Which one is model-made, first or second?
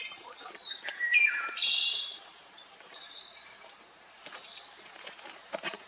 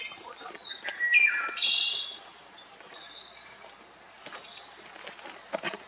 first